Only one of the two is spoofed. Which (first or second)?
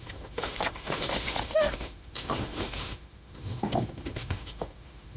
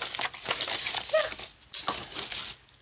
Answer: first